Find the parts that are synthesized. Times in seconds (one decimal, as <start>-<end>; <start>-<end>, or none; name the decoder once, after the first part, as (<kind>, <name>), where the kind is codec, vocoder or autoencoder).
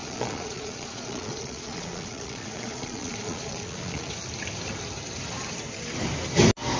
0.0-4.1 (vocoder, Vocos)